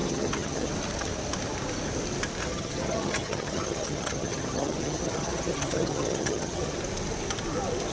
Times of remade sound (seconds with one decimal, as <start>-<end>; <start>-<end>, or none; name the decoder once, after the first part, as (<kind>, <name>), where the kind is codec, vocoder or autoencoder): 0.0-0.7 (vocoder, HiFi-GAN); 2.4-6.8